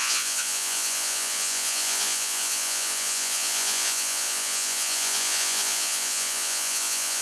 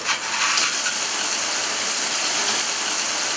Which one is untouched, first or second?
second